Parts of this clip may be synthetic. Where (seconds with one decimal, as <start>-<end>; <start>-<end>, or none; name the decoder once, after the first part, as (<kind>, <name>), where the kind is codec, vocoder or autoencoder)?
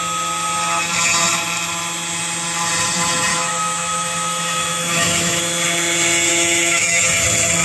3.3-5.4 (autoencoder, DAC-VAE); 6.3-7.0